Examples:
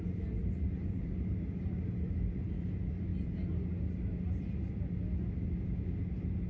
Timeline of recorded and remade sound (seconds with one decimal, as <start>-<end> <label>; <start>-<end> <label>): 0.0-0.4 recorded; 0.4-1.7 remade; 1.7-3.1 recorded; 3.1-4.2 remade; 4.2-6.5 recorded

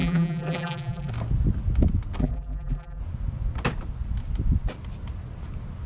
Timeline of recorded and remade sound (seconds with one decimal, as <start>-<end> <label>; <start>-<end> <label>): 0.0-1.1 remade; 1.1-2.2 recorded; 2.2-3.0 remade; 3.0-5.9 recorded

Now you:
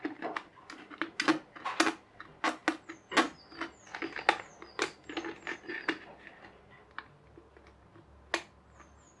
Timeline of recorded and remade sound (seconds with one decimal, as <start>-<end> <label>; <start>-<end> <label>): 0.0-9.2 recorded

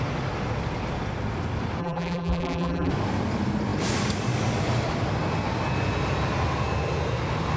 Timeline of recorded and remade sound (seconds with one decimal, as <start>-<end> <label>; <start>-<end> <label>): 0.0-1.8 recorded; 1.8-2.9 remade; 2.9-7.6 recorded

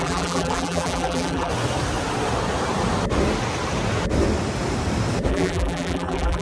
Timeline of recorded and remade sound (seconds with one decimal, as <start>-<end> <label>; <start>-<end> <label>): 0.0-1.5 remade; 1.5-5.3 recorded; 5.3-6.4 remade

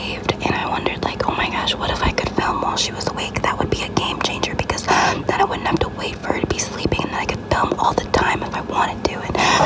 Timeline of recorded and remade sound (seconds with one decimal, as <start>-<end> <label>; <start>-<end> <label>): 0.0-9.7 recorded

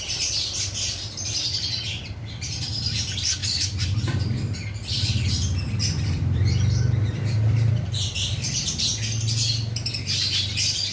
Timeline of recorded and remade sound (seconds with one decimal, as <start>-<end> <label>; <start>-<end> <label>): 0.0-8.9 remade; 8.9-10.4 recorded; 10.4-10.9 remade